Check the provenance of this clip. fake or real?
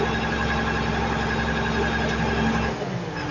real